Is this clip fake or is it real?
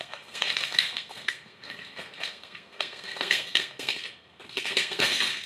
fake